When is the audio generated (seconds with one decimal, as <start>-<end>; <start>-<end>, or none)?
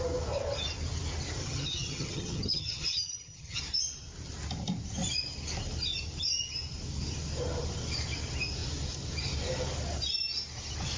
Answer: 1.4-3.6